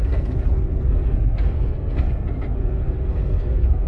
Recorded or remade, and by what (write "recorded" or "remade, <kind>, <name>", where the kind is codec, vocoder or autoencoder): remade, codec, SNAC